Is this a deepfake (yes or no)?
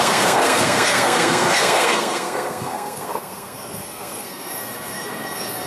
yes